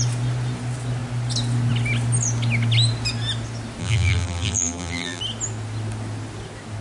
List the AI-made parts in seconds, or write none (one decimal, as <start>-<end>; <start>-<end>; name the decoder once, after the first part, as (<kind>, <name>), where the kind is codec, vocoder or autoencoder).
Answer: 3.8-5.2 (vocoder, BigVGAN v2)